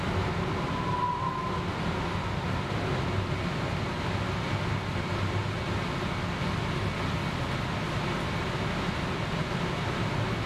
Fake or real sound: real